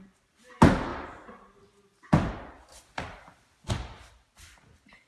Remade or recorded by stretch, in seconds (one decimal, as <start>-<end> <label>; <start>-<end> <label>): 0.0-5.1 recorded